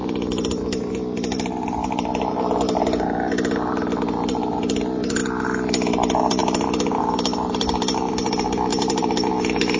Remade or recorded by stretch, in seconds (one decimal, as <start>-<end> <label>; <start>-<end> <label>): 0.0-5.2 remade; 5.2-5.9 recorded; 5.9-9.8 remade

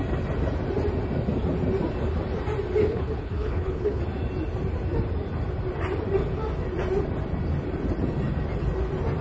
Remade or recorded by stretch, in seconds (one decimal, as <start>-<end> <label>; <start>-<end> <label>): 0.0-2.8 recorded; 2.8-4.0 remade; 4.0-9.2 recorded

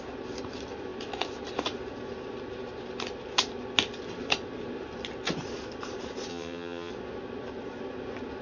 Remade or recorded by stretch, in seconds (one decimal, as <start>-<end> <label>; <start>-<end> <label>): 0.0-6.3 recorded; 6.3-6.9 remade; 6.9-8.4 recorded

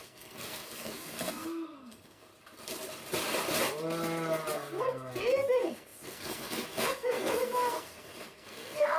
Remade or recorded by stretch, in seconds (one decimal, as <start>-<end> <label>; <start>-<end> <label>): 0.0-2.3 remade; 2.3-4.5 recorded; 4.5-9.0 remade

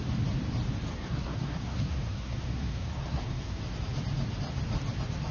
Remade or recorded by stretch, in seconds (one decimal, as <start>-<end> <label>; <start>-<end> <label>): 0.0-0.9 recorded; 0.9-3.6 remade; 3.6-5.3 recorded

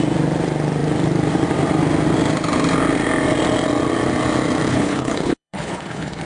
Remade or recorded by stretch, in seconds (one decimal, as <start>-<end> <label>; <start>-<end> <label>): 0.0-4.7 recorded; 4.7-6.2 remade